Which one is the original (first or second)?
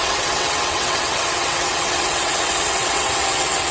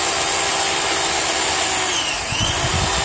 second